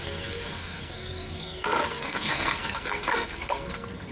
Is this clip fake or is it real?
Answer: fake